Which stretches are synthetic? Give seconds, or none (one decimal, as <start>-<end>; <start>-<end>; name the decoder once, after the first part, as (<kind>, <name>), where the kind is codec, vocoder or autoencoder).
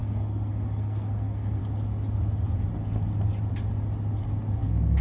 0.0-1.6 (codec, SNAC); 4.6-5.0